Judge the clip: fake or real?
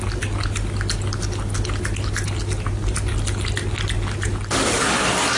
real